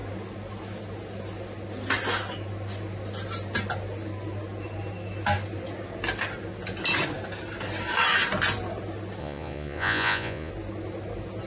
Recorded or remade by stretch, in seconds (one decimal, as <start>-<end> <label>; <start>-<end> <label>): 0.0-9.2 recorded; 9.2-10.5 remade; 10.5-11.5 recorded

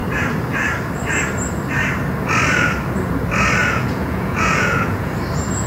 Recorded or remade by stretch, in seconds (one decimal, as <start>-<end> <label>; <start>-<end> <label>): 0.0-3.6 recorded; 3.6-5.1 remade; 5.1-5.7 recorded

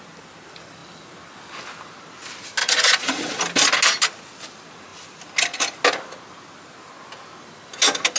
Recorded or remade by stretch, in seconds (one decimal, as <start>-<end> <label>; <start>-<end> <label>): 0.0-2.6 recorded; 2.6-3.4 remade; 3.4-8.2 recorded

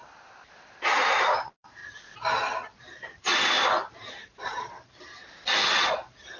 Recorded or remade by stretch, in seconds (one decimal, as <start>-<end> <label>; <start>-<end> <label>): 0.0-1.8 remade; 1.8-2.8 recorded; 2.8-3.3 remade; 3.3-3.9 recorded; 3.9-5.2 remade; 5.2-5.9 recorded; 5.9-6.4 remade

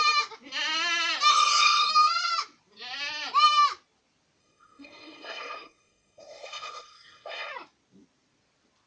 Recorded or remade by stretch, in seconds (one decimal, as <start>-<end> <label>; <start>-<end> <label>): 0.0-1.3 recorded; 1.3-1.9 remade; 1.9-4.4 recorded; 4.4-7.5 remade; 7.5-8.9 recorded